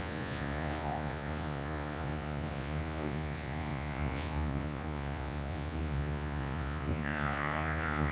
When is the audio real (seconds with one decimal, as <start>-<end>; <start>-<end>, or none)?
none